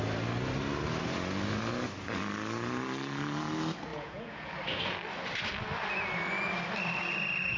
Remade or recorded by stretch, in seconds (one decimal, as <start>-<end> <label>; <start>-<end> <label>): 0.0-3.9 recorded; 3.9-4.5 remade; 4.5-7.6 recorded